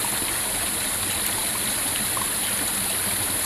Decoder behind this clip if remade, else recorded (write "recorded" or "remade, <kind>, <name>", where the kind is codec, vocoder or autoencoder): recorded